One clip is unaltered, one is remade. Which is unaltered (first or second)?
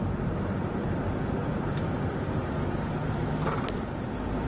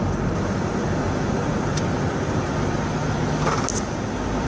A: second